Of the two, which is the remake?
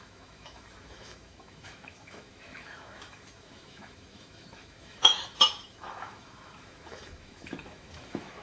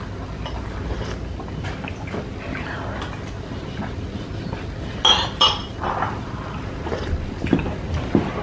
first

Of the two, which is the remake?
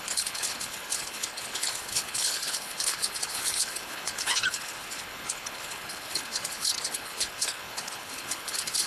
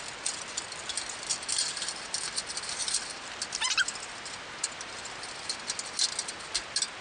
first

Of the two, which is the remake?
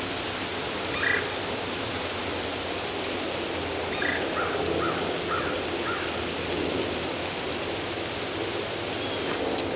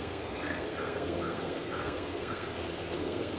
second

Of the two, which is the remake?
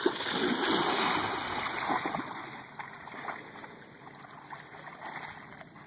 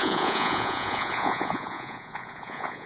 second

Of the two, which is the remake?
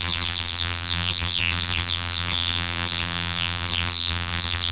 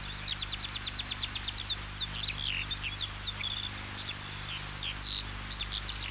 first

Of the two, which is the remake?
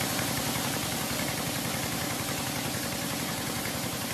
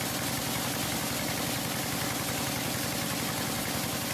first